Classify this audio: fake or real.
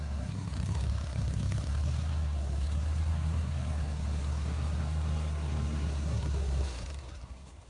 fake